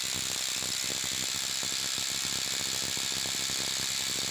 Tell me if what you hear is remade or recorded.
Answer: recorded